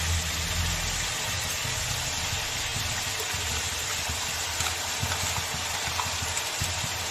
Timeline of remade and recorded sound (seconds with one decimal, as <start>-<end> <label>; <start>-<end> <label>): 0.0-7.1 recorded